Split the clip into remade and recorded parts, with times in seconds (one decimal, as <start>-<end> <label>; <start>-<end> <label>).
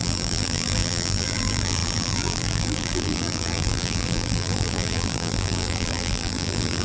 0.0-6.8 remade